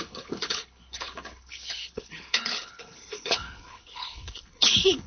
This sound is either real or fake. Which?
fake